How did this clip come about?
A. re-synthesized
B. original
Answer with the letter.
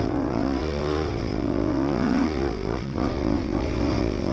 A